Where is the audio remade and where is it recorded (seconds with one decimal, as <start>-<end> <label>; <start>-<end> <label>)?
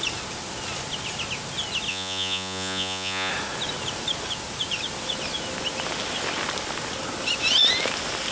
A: 0.0-1.9 recorded; 1.9-3.3 remade; 3.3-8.3 recorded